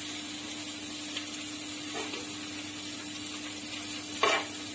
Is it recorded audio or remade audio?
recorded